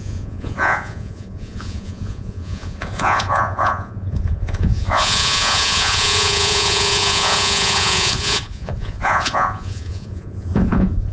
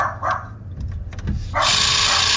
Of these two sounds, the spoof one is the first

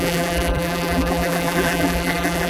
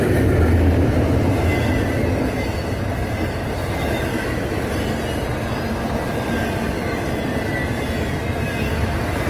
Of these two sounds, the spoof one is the first